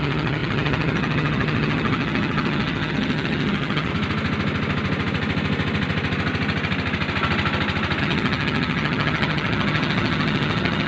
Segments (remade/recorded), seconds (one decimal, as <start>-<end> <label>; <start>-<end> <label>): 0.0-3.9 remade; 3.9-8.0 recorded; 8.0-10.9 remade